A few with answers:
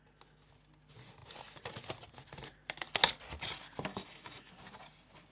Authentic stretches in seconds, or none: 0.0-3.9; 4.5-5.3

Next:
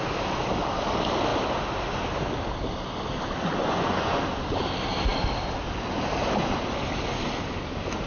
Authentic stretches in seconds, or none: 0.0-3.6; 4.2-8.1

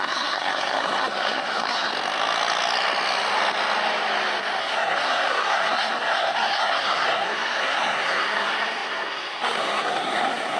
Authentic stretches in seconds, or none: 1.9-4.6